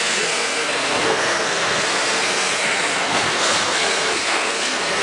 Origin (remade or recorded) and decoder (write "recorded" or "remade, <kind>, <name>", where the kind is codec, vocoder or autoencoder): remade, codec, SNAC